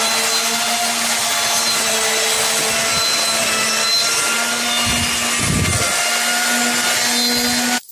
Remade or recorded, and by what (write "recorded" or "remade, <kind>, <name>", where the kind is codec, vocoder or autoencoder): recorded